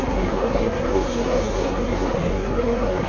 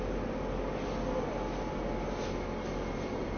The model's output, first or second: first